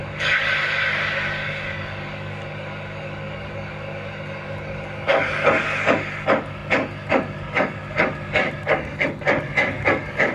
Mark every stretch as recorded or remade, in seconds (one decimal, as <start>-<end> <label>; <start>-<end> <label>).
0.0-10.3 remade